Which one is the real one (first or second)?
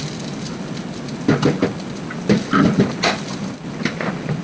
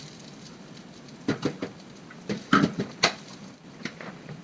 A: first